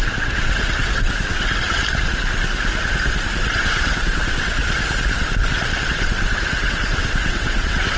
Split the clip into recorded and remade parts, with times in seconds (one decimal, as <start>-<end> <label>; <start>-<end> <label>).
0.0-1.8 remade; 1.8-3.5 recorded; 3.5-4.6 remade; 4.6-5.9 recorded; 5.9-8.0 remade